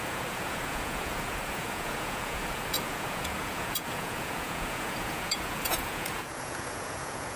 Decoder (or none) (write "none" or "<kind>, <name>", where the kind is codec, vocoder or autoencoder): vocoder, Vocos